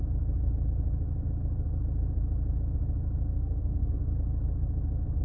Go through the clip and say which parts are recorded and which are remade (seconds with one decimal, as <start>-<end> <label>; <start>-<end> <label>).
0.0-3.3 recorded; 3.3-4.1 remade; 4.1-5.2 recorded

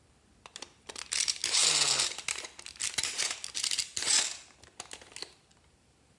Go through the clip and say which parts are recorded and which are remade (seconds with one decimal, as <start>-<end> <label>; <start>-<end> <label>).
0.0-6.2 recorded

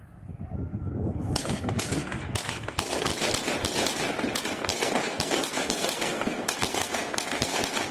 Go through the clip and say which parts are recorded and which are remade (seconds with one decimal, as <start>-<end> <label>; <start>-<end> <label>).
0.0-3.1 remade; 3.1-4.4 recorded; 4.4-7.9 remade

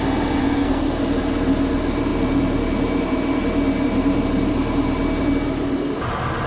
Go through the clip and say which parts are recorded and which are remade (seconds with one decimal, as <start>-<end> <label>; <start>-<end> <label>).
0.0-0.4 recorded; 0.4-1.0 remade; 1.0-6.5 recorded